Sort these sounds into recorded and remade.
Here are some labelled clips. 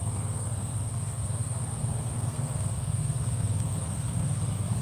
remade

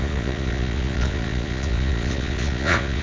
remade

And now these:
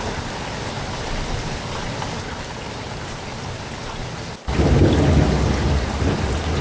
recorded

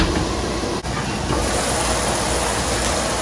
recorded